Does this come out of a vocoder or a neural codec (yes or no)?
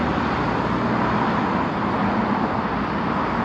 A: no